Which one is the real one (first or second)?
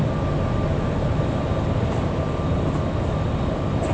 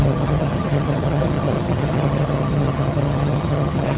first